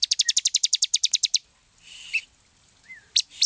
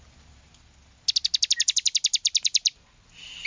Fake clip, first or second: first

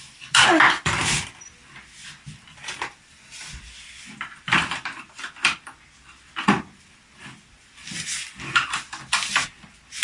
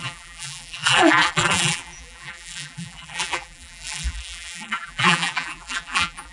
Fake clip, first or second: second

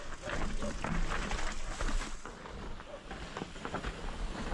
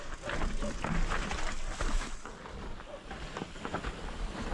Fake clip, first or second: second